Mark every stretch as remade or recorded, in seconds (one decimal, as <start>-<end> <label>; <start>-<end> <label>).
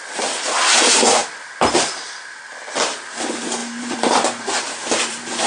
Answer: 0.0-3.6 recorded; 3.6-5.5 remade